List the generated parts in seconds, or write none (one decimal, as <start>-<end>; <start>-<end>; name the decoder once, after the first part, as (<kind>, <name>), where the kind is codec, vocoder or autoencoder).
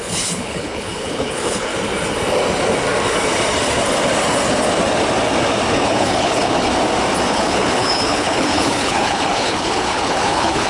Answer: 0.0-1.7 (codec, HILCodec); 5.7-6.7; 7.3-10.7